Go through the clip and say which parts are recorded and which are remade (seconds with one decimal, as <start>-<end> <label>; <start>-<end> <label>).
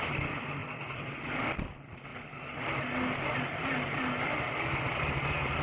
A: 0.0-5.6 recorded